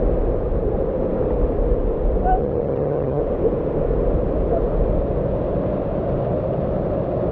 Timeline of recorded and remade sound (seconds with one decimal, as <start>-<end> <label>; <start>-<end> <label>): 0.0-2.4 recorded; 2.4-3.2 remade; 3.2-7.3 recorded